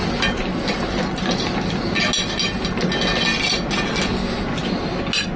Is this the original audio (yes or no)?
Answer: yes